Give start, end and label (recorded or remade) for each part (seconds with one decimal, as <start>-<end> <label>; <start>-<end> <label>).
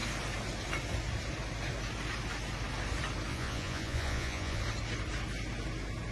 0.0-3.3 recorded; 3.3-4.6 remade; 4.6-6.1 recorded